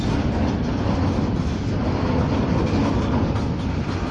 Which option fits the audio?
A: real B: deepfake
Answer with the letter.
A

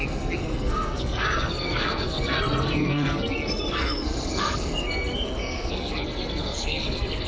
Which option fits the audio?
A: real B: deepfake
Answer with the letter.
B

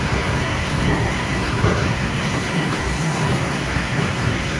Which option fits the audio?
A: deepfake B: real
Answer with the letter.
A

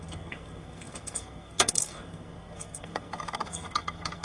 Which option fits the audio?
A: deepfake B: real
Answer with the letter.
A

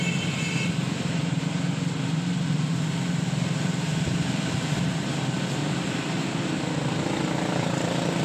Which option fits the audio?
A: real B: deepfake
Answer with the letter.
A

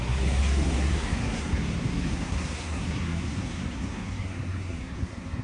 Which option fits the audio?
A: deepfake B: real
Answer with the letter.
A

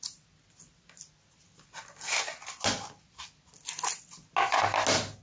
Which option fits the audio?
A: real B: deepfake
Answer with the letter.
A